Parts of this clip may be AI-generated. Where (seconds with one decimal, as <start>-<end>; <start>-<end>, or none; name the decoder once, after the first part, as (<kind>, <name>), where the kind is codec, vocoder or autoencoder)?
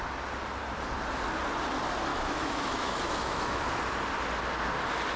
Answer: 2.1-3.6 (autoencoder, DAC-VAE)